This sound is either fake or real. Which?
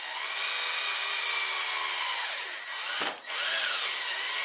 real